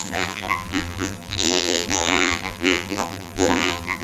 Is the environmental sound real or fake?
fake